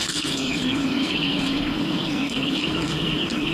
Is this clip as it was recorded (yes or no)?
no